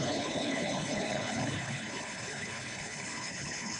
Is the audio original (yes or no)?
no